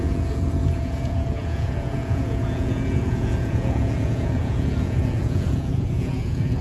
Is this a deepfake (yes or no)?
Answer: yes